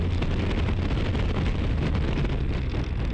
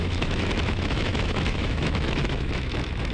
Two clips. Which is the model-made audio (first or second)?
second